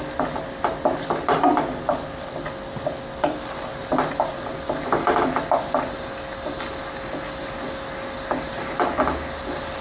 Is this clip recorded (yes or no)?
yes